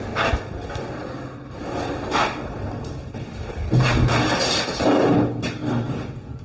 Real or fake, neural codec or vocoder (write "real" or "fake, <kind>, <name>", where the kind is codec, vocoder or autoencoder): real